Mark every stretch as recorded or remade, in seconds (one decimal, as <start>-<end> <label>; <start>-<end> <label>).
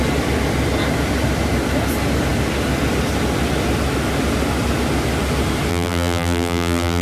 0.0-5.7 recorded; 5.7-7.0 remade